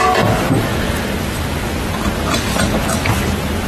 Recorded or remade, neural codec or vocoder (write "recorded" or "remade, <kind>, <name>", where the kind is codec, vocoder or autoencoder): recorded